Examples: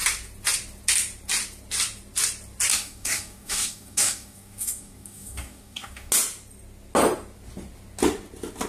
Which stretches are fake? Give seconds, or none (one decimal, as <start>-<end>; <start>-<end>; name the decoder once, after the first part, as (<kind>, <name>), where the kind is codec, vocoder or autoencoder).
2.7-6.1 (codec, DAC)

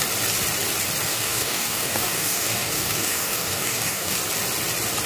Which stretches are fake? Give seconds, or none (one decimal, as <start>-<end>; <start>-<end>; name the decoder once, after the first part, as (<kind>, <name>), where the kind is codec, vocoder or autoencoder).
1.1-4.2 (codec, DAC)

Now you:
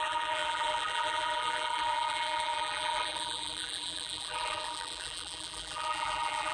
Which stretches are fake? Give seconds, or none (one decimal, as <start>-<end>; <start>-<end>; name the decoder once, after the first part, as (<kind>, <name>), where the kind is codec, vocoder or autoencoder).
0.0-6.5 (vocoder, BigVGAN v2)